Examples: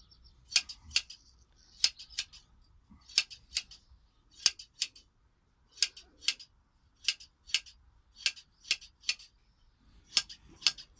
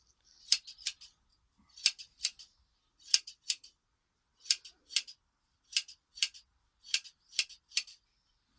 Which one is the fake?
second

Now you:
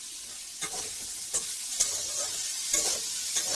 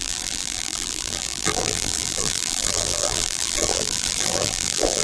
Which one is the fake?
second